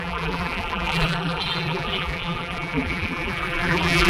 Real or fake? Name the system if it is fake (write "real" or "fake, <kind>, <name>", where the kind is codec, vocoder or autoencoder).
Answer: fake, vocoder, BigVGAN v2